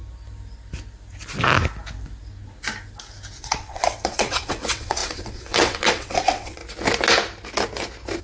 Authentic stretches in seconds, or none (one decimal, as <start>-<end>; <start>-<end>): 0.0-3.4; 6.6-8.2